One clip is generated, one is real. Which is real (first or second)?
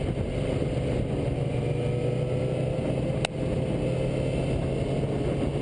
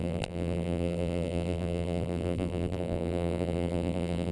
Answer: first